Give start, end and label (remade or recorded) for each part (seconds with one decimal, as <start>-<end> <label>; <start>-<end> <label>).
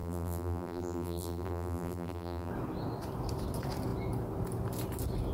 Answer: 0.0-2.5 remade; 2.5-5.3 recorded